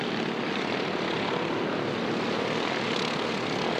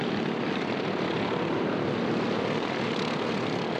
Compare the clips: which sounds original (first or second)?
first